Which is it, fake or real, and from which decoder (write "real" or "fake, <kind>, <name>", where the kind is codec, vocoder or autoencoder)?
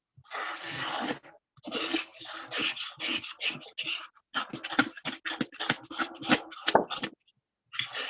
real